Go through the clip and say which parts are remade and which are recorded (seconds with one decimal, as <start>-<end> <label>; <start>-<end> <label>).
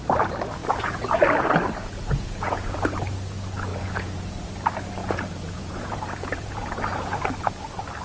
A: 0.0-0.6 recorded; 0.6-1.2 remade; 1.2-1.8 recorded; 1.8-2.7 remade; 2.7-3.7 recorded; 3.7-4.3 remade; 4.3-5.0 recorded; 5.0-6.8 remade; 6.8-8.0 recorded